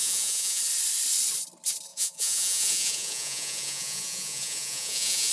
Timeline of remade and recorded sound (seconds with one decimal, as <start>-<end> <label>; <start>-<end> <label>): 0.0-0.6 remade; 0.6-1.9 recorded; 1.9-5.3 remade